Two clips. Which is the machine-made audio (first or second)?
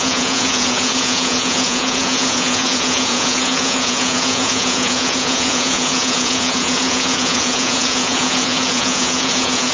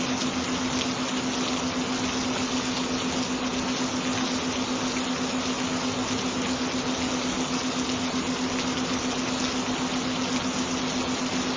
first